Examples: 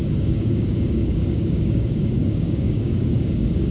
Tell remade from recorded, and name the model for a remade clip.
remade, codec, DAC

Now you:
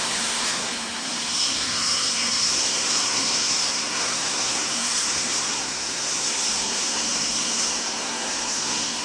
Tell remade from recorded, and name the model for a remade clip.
remade, codec, SNAC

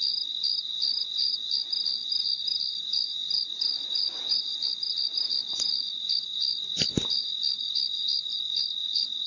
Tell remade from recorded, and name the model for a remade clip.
recorded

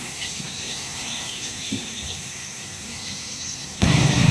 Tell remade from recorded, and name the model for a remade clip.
remade, codec, SNAC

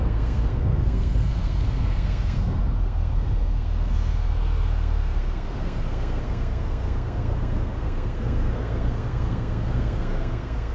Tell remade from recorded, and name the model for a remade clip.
remade, codec, SNAC